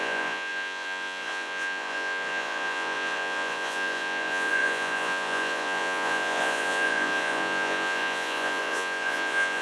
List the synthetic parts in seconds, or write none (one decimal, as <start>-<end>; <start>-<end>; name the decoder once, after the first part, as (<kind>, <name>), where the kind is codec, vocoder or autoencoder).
0.0-9.6 (vocoder, Vocos)